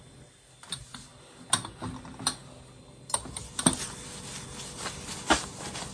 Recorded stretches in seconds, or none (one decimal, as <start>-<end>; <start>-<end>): 0.0-5.9